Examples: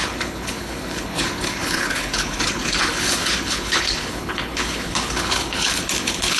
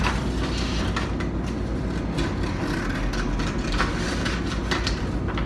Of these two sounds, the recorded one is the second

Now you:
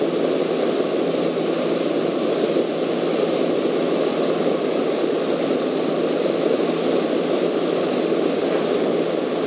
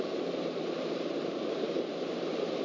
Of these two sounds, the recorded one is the first